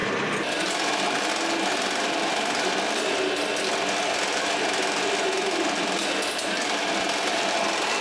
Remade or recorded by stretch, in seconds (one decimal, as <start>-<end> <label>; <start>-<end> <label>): 0.0-8.0 recorded